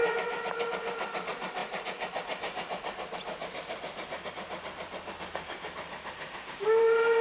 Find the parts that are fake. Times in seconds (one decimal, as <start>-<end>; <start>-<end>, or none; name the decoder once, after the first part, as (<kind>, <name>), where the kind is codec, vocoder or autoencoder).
none